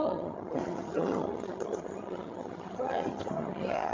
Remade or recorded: remade